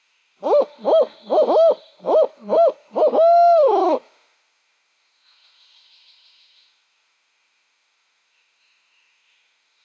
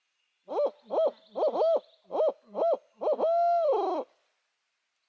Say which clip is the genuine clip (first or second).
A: second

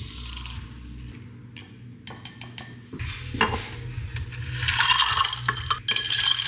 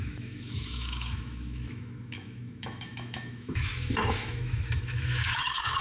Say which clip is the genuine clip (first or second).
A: first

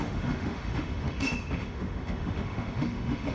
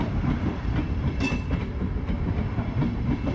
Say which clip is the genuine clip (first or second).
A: second